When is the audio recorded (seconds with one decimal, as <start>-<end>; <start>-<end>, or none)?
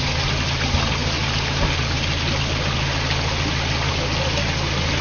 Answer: 0.0-5.0